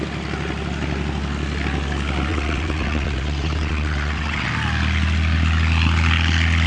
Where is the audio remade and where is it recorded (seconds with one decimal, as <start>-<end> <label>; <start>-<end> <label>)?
0.0-2.3 recorded; 2.3-4.5 remade; 4.5-6.7 recorded

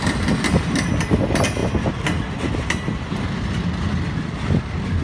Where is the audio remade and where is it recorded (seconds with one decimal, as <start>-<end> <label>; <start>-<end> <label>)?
0.0-5.0 recorded

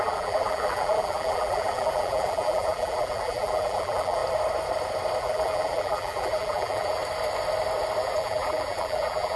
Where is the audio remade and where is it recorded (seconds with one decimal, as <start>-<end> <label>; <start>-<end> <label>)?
0.0-4.2 remade; 4.2-5.2 recorded; 5.2-7.0 remade; 7.0-8.0 recorded; 8.0-9.4 remade

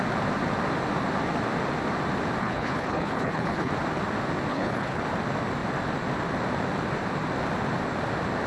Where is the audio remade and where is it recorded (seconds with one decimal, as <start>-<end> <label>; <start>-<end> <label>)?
0.0-2.4 recorded; 2.4-3.7 remade; 3.7-4.5 recorded; 4.5-5.0 remade; 5.0-8.5 recorded

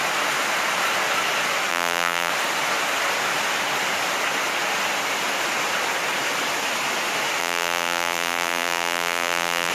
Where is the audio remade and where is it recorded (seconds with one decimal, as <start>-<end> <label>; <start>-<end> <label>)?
0.0-1.7 recorded; 1.7-2.3 remade; 2.3-7.4 recorded; 7.4-9.7 remade

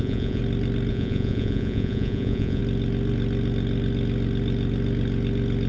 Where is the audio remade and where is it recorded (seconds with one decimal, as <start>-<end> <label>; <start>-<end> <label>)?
0.0-0.4 remade; 0.4-0.9 recorded; 0.9-2.6 remade; 2.6-5.7 recorded

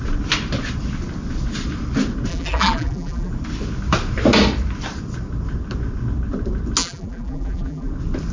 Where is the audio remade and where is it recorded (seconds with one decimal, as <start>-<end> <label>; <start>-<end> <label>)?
0.0-2.3 recorded; 2.3-3.3 remade; 3.3-6.8 recorded; 6.8-7.9 remade; 7.9-8.3 recorded